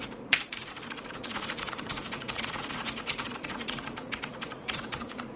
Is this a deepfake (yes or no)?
yes